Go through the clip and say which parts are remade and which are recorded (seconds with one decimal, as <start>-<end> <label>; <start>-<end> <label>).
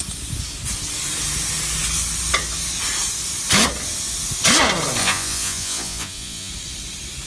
0.0-5.0 recorded; 5.0-6.5 remade; 6.5-7.3 recorded